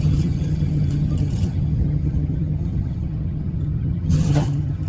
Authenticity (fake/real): fake